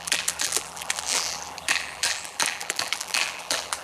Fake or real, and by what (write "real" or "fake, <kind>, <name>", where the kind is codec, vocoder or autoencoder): fake, vocoder, BigVGAN v2